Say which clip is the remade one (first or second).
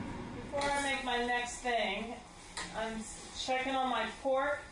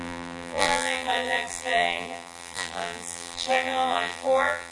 second